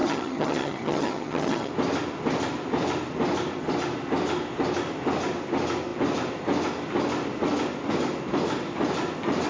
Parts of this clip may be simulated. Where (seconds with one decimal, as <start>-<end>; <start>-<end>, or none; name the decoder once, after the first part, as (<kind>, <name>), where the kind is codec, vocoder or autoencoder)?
0.0-1.7 (vocoder, HiFi-GAN)